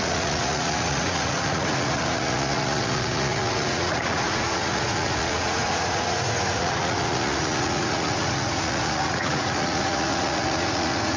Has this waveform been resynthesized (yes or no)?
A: yes